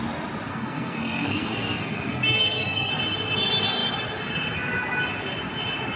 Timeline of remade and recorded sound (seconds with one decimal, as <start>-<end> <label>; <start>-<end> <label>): 0.0-0.5 recorded; 0.5-2.9 remade; 2.9-6.0 recorded